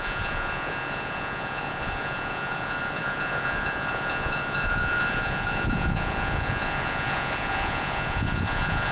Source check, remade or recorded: remade